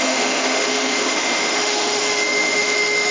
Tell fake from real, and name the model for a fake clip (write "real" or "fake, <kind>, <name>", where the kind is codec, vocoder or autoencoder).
fake, autoencoder, DAC-VAE